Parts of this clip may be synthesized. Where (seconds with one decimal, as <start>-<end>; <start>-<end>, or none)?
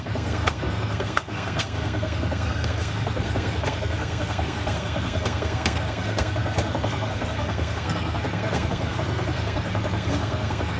0.0-10.8